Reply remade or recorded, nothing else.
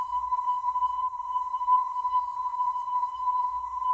remade